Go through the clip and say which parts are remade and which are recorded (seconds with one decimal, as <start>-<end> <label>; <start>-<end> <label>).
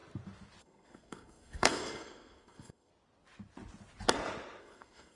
0.0-0.6 recorded; 0.6-2.9 remade; 2.9-4.6 recorded; 4.6-5.2 remade